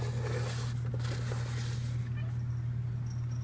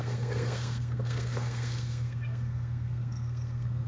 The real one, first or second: first